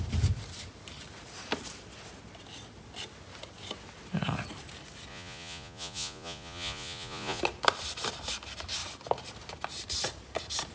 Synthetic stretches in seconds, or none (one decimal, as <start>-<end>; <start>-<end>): 5.1-7.4